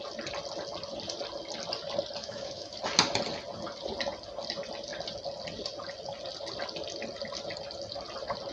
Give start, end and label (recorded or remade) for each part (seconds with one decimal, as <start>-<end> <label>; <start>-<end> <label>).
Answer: 0.0-2.2 recorded; 2.2-2.8 remade; 2.8-8.5 recorded